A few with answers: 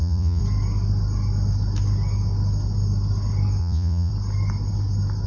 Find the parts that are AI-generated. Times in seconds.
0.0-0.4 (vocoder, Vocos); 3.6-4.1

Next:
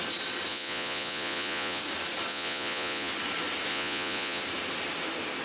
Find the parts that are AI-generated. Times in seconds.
0.5-1.8 (vocoder, Vocos); 2.3-3.1; 3.7-4.4

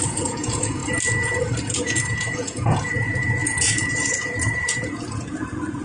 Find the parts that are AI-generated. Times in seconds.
0.0-0.8 (vocoder, Vocos); 1.8-5.8

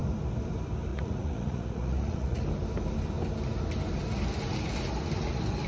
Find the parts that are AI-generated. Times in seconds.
0.9-2.4 (vocoder, Vocos)

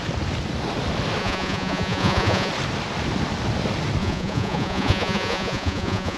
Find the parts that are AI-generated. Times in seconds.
1.2-2.5 (vocoder, Vocos); 4.0-6.2

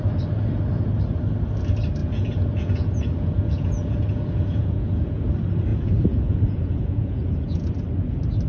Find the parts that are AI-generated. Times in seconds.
2.0-5.2 (vocoder, Vocos); 5.7-7.7